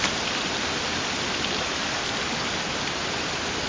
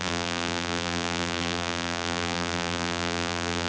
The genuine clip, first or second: first